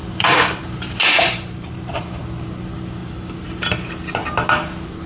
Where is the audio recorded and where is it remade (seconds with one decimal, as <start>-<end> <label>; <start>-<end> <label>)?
0.0-2.2 remade; 2.2-3.0 recorded; 3.0-3.9 remade; 3.9-5.1 recorded